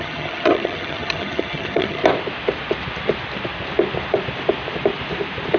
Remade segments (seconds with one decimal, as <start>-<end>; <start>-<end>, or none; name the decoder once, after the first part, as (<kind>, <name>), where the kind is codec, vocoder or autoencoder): 0.0-2.0 (vocoder, HiFi-GAN)